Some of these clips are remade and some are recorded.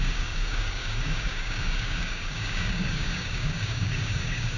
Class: remade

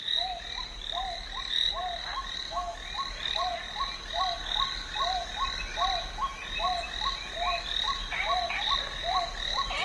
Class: recorded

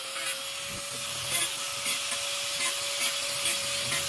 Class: recorded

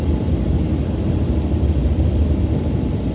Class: recorded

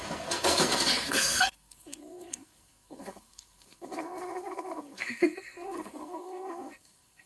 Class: remade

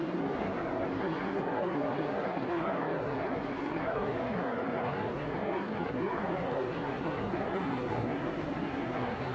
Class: remade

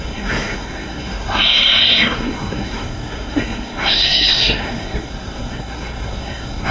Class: remade